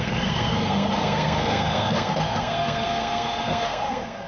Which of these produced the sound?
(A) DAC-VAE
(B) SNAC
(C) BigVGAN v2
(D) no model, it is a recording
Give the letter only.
B